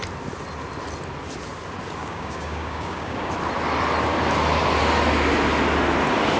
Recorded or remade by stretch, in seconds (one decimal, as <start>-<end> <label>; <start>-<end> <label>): 0.0-2.0 recorded; 2.0-3.3 remade; 3.3-6.4 recorded